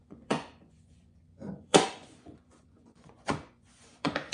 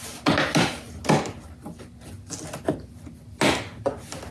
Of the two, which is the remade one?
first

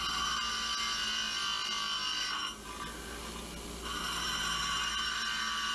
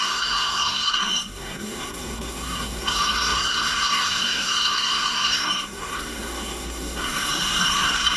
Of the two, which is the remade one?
second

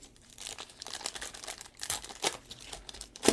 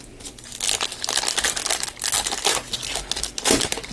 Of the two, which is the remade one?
first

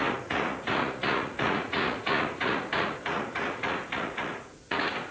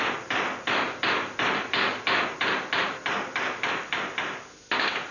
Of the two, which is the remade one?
first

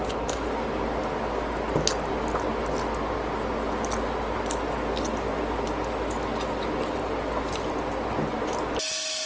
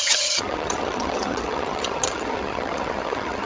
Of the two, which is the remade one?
second